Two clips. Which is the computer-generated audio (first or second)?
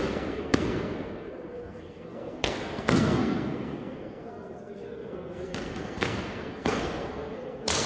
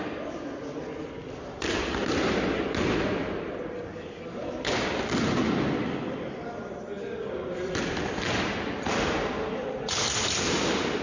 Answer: first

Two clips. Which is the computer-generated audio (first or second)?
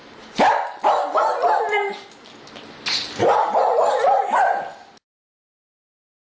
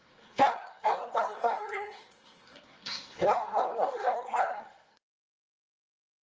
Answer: second